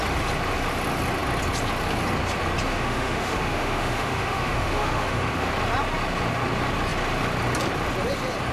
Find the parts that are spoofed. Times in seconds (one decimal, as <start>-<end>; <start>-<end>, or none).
2.7-5.5